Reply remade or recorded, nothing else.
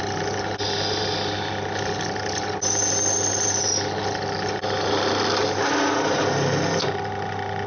recorded